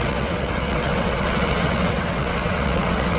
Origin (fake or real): fake